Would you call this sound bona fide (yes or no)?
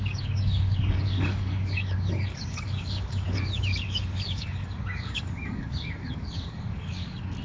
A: no